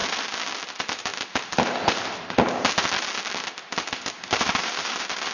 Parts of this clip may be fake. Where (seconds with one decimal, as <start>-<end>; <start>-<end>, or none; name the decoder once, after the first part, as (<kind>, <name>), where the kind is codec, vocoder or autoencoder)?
0.7-1.1 (vocoder, BigVGAN v2); 4.3-5.3